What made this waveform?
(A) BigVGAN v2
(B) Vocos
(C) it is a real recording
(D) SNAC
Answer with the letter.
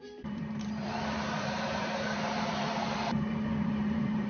A